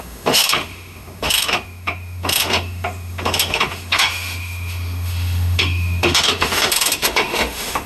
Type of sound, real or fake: fake